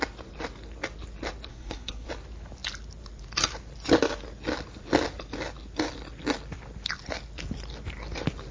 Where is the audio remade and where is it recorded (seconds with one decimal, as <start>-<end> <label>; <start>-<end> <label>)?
0.0-1.5 recorded; 1.5-2.1 remade; 2.1-8.5 recorded

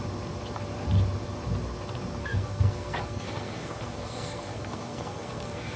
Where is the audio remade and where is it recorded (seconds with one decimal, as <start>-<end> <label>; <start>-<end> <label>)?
0.0-2.2 recorded; 2.2-5.8 remade